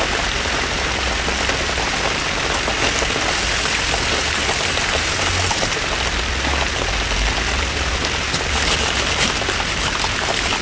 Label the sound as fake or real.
real